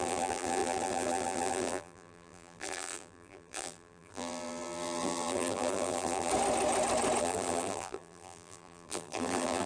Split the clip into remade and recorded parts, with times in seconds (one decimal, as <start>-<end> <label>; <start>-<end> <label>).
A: 0.0-6.3 remade; 6.3-7.2 recorded; 7.2-9.7 remade